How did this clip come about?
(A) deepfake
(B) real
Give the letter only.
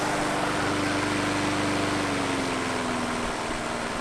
B